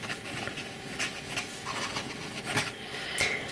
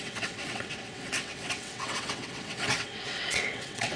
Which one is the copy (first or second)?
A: second